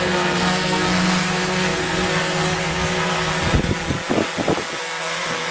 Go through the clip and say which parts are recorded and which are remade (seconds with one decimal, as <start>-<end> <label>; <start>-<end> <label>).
0.0-3.3 remade; 3.3-4.8 recorded; 4.8-5.5 remade